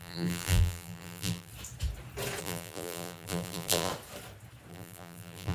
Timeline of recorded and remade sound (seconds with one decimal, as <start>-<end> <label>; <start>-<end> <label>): 0.0-1.5 remade; 1.5-2.4 recorded; 2.4-3.9 remade; 3.9-4.7 recorded; 4.7-5.5 remade